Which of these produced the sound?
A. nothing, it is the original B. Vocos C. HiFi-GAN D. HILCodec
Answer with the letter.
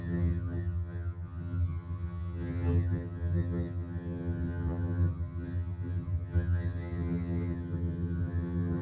C